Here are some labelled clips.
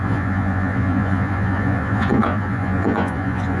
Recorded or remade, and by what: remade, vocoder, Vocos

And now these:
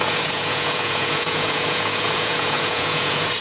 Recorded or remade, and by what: remade, vocoder, Vocos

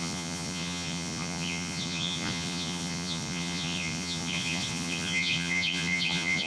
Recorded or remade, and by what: remade, vocoder, Vocos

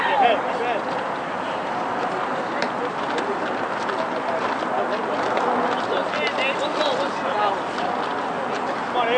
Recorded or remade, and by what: recorded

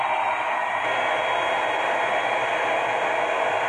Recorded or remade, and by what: recorded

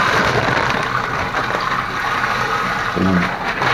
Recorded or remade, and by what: recorded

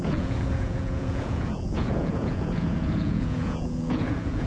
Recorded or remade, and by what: remade, vocoder, Vocos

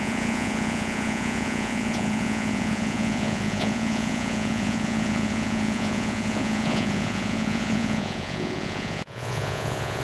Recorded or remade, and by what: remade, vocoder, Vocos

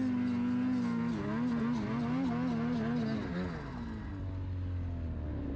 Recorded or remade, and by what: recorded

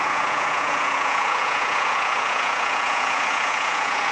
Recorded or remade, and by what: remade, vocoder, Vocos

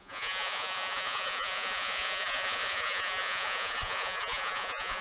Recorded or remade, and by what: remade, vocoder, Vocos